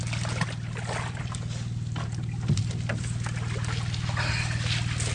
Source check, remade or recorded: recorded